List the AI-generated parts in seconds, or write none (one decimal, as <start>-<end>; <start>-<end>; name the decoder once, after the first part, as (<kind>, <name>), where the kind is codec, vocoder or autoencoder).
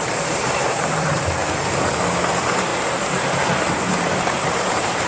0.0-1.4 (vocoder, BigVGAN v2); 2.3-5.1